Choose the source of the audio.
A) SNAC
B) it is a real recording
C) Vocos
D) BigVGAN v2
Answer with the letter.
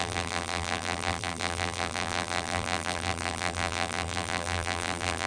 D